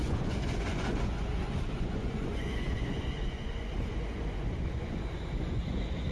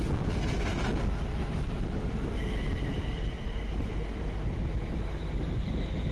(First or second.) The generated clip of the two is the first